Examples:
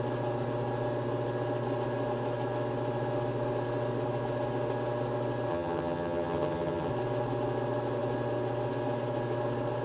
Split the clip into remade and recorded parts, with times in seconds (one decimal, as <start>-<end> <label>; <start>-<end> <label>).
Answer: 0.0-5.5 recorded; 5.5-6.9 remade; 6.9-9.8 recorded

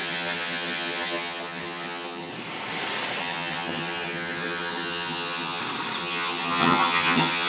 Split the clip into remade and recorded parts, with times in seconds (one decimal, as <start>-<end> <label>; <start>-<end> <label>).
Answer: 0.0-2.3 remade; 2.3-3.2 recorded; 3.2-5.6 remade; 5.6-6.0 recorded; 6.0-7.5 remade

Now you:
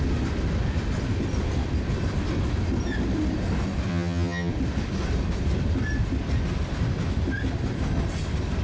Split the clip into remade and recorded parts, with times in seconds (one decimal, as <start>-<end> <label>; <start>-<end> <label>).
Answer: 0.0-3.9 recorded; 3.9-4.5 remade; 4.5-8.6 recorded